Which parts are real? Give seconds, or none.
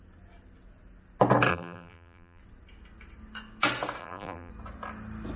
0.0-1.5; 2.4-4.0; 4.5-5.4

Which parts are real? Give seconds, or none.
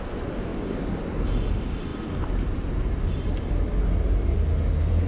0.0-0.5; 1.0-5.1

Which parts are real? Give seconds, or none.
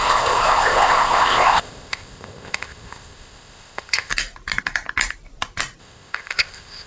4.1-5.8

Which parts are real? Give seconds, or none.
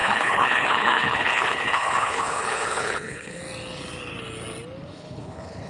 3.4-4.8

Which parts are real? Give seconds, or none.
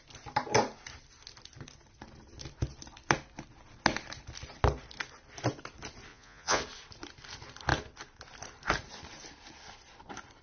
0.0-6.1; 6.6-10.4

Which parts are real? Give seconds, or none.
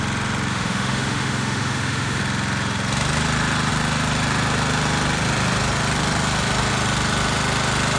0.0-0.5; 2.2-8.0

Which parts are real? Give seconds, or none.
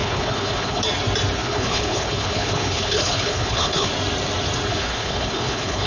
0.8-1.4; 3.9-4.7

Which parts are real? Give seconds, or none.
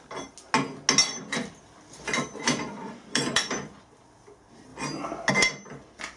0.0-1.0; 3.8-6.2